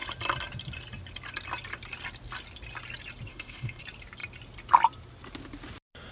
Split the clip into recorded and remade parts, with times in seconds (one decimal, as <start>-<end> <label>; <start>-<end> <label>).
0.0-3.3 recorded; 3.3-3.8 remade; 3.8-6.1 recorded